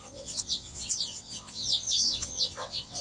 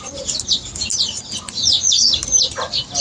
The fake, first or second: first